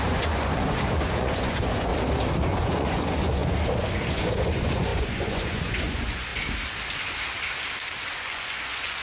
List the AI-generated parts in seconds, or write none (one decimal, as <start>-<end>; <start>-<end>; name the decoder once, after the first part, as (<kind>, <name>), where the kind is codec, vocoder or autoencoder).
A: 0.0-1.9 (vocoder, Vocos); 2.4-3.4; 4.1-6.3; 8.2-9.0